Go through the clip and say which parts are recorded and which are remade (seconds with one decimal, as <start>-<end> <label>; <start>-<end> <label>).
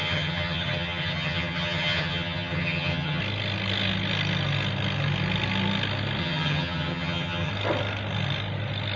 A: 0.0-3.2 remade; 3.2-6.2 recorded; 6.2-7.5 remade; 7.5-9.0 recorded